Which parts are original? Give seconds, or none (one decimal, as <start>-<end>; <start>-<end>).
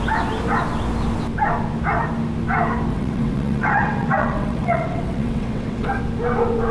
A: 0.0-2.9; 6.0-6.7